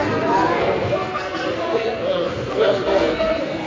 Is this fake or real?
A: fake